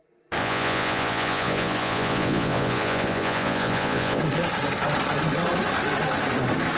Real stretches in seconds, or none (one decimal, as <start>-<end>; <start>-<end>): 0.0-0.4; 4.2-6.8